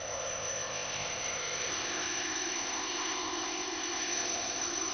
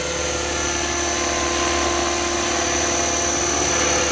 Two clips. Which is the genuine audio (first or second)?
second